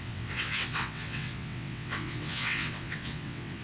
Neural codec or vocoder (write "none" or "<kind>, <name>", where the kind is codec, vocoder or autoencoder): vocoder, WaveNeXt